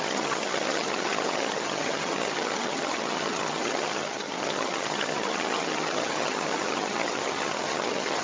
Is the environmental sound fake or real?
fake